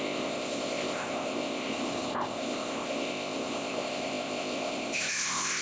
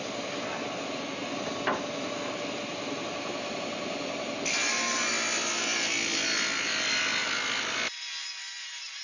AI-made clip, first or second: first